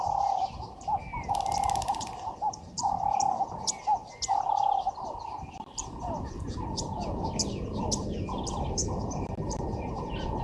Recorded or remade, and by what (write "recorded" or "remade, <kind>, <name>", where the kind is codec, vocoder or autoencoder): recorded